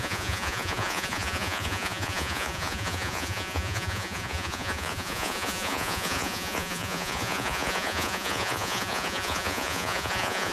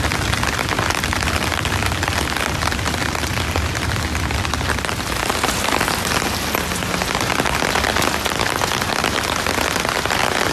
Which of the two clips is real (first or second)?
second